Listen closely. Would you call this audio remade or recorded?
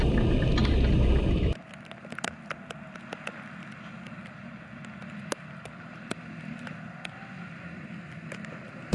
recorded